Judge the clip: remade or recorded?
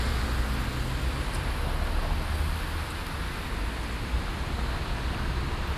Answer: recorded